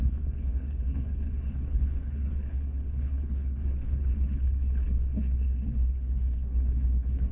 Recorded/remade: remade